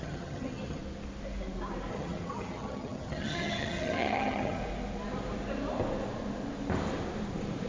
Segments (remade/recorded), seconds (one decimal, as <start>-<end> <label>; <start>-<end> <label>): 0.0-0.8 remade; 0.8-1.9 recorded; 1.9-4.6 remade; 4.6-7.7 recorded